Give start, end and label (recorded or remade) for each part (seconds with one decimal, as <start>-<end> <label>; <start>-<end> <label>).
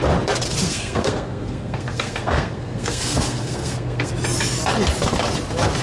0.0-0.6 recorded; 0.6-4.1 remade; 4.1-5.8 recorded